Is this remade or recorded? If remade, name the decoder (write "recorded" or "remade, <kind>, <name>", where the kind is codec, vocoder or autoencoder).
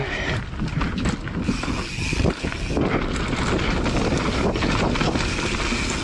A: recorded